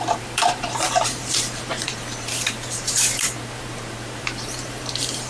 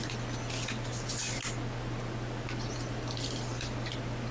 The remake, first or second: first